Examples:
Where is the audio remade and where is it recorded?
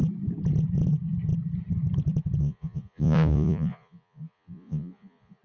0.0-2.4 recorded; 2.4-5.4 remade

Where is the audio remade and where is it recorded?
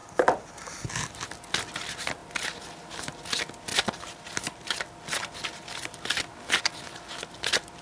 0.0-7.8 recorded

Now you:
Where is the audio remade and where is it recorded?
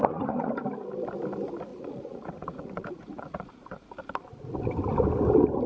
0.0-0.5 remade; 0.5-1.7 recorded; 1.7-3.9 remade; 3.9-5.7 recorded